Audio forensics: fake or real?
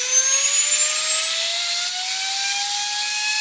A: real